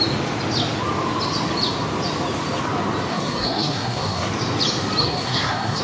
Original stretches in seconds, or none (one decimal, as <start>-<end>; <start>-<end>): 0.0-3.1; 4.3-5.0

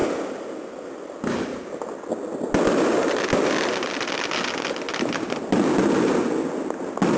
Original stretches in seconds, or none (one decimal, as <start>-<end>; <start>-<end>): 0.0-7.2

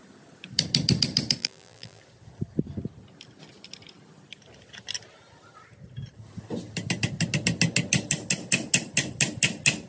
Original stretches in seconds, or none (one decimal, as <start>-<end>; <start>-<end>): 0.0-1.4; 2.0-9.9

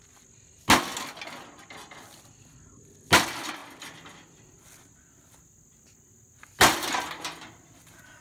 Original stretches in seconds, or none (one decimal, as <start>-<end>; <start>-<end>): 0.0-8.2